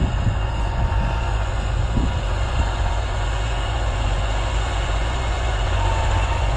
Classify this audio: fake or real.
fake